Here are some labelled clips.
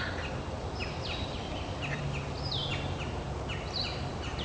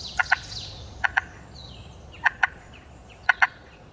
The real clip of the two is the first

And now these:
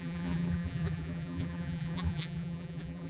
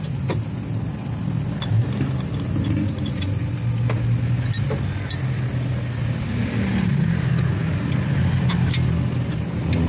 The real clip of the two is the second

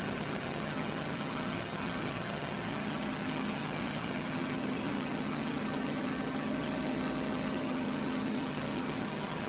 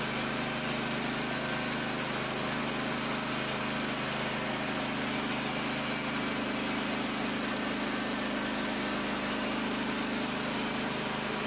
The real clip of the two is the second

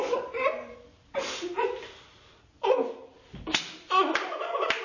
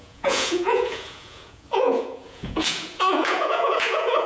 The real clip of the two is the first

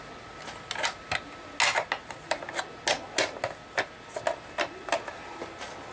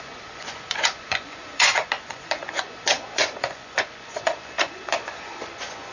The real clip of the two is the first